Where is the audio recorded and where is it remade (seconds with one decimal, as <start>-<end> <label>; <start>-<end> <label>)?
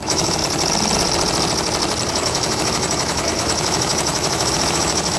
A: 0.0-0.4 remade; 0.4-2.1 recorded; 2.1-5.2 remade